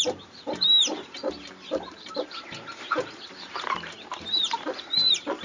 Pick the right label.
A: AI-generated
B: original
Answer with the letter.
A